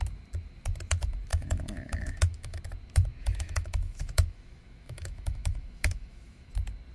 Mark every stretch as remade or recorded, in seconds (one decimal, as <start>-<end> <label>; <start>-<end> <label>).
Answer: 0.0-1.3 recorded; 1.3-2.6 remade; 2.6-3.2 recorded; 3.2-6.5 remade; 6.5-6.9 recorded